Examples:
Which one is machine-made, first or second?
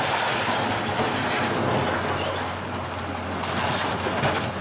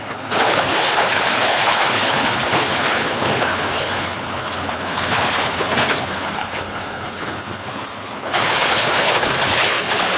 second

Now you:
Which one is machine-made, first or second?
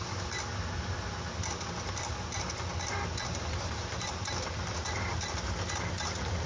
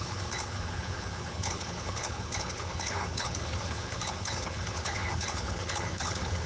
second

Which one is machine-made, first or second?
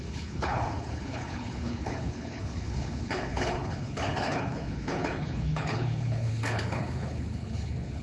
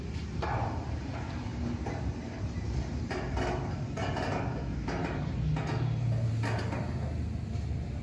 first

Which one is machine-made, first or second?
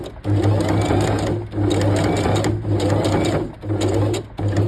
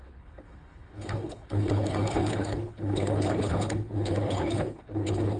second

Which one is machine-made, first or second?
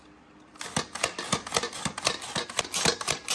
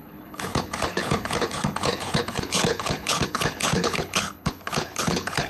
second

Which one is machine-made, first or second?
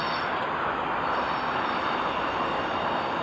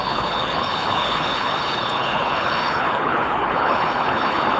second